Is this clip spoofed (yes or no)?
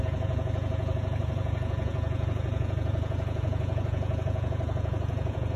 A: yes